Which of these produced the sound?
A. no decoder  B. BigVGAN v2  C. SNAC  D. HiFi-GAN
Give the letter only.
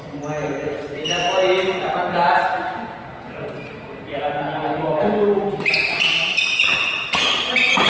A